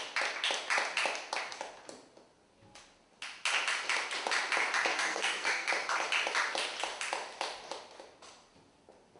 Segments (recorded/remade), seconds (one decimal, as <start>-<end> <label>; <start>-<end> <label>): 0.0-4.9 recorded; 4.9-5.7 remade; 5.7-9.2 recorded